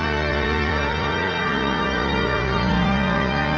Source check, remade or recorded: remade